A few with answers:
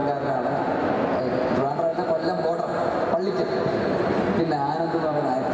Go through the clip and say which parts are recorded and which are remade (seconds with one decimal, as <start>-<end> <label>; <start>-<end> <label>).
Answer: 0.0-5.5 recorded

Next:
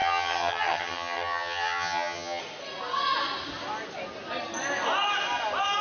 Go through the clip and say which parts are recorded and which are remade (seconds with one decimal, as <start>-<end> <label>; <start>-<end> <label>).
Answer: 0.0-2.4 remade; 2.4-5.8 recorded

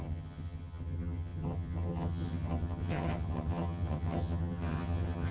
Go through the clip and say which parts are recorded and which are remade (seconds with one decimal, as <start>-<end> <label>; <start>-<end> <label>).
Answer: 0.0-5.3 remade

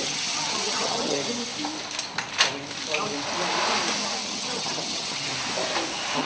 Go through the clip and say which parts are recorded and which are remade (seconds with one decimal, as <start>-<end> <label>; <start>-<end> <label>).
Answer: 0.0-1.2 remade; 1.2-4.2 recorded; 4.2-5.3 remade; 5.3-6.2 recorded

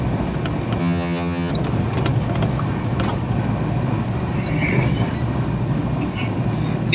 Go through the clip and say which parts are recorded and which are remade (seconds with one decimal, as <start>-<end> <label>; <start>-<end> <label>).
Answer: 0.0-0.8 recorded; 0.8-1.5 remade; 1.5-6.9 recorded

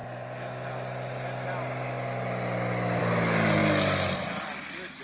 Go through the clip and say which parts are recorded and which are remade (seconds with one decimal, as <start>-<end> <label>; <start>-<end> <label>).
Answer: 0.0-5.0 recorded

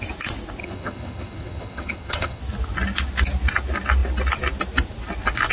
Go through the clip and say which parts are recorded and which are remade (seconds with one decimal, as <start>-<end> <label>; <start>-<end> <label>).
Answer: 0.0-0.6 recorded; 0.6-2.4 remade; 2.4-5.5 recorded